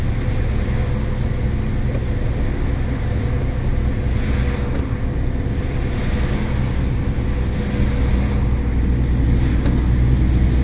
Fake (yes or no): no